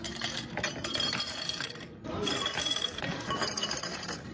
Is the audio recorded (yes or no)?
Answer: no